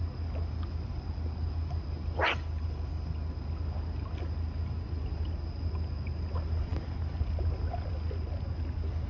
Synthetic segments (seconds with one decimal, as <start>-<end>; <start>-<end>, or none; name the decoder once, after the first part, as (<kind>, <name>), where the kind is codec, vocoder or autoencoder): none